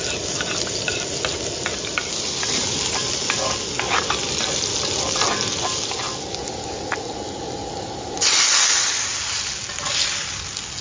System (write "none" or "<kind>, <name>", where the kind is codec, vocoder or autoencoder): none